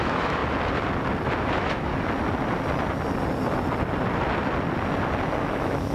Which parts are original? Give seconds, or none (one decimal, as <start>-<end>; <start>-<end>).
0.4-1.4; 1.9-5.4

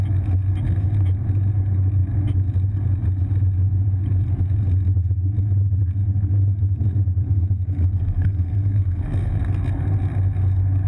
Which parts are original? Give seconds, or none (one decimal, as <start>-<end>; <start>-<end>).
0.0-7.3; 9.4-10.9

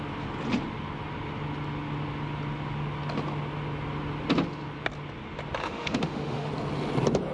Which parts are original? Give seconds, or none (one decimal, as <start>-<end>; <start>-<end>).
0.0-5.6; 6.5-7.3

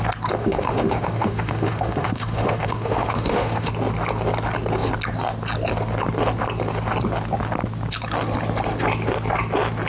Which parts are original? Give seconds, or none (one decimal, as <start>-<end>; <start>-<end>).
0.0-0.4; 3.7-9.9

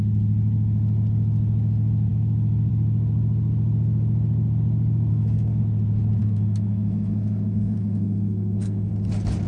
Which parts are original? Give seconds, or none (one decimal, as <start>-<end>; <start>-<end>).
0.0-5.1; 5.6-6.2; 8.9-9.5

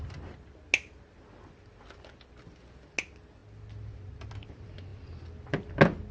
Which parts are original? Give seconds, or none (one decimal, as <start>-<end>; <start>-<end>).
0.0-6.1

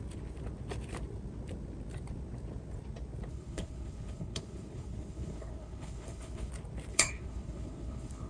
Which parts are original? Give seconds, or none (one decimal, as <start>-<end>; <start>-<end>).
0.0-3.3; 6.5-6.9